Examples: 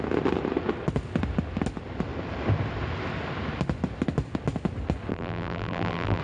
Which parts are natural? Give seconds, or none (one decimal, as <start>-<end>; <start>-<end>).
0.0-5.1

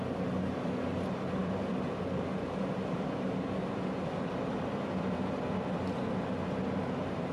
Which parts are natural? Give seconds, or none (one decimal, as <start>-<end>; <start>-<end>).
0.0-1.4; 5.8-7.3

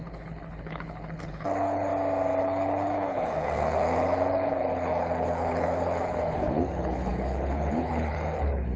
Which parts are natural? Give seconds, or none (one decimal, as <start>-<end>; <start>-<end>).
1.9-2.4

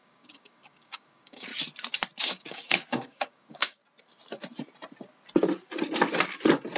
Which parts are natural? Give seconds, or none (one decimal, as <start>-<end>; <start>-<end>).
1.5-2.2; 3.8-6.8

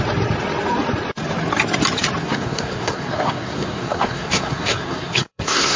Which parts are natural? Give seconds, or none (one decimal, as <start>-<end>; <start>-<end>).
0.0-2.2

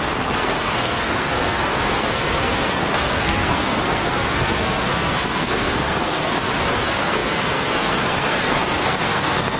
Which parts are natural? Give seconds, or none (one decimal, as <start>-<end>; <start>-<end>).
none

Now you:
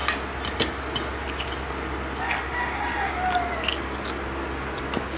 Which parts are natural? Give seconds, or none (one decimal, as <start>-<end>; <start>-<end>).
0.0-5.2

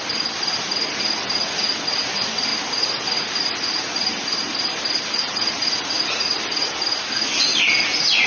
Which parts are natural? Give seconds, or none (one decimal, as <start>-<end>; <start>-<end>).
0.0-8.3